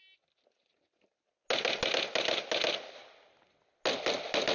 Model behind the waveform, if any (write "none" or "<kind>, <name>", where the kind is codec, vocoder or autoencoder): none